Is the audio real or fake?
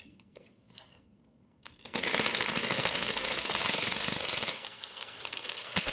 fake